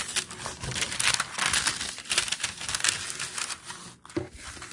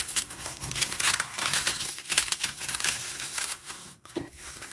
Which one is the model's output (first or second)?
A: second